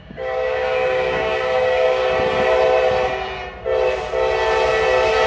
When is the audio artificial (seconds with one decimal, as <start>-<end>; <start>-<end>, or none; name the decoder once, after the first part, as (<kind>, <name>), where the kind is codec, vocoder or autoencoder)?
0.0-2.0 (codec, DAC)